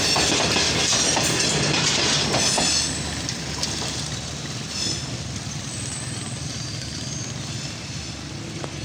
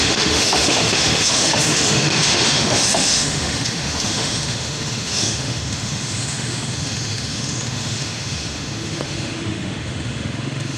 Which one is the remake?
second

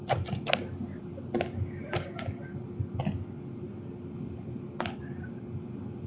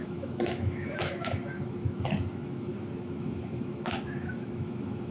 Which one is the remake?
second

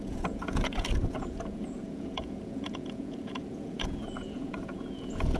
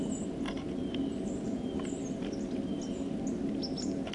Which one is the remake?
first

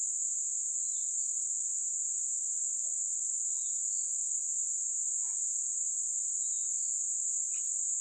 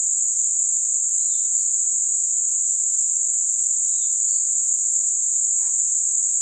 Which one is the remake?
second